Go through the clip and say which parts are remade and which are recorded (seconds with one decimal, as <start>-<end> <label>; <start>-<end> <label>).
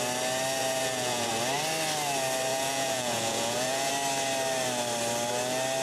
0.0-0.6 recorded; 0.6-1.3 remade; 1.3-2.5 recorded; 2.5-3.9 remade; 3.9-5.8 recorded